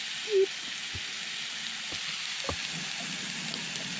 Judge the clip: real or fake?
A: real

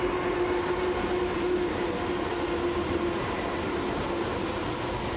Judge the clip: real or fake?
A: real